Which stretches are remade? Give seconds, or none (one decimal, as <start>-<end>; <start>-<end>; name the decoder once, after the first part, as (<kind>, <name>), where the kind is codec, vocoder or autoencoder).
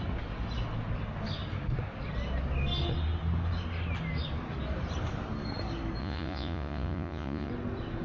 6.0-7.5 (vocoder, Vocos)